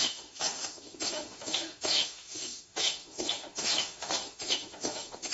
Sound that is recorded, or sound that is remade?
remade